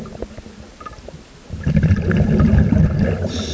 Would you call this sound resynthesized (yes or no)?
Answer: no